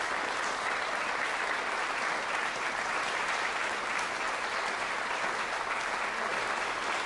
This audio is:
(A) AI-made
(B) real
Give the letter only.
B